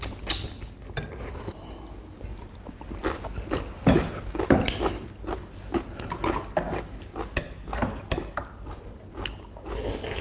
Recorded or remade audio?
recorded